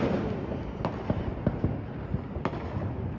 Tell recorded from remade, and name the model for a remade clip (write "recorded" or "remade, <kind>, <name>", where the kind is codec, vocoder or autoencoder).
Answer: recorded